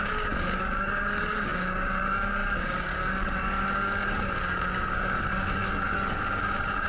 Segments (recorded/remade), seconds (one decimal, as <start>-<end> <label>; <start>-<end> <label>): 0.0-6.9 remade